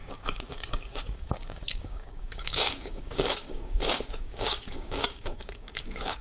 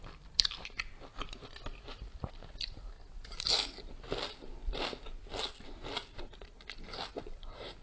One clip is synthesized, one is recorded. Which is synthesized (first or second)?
first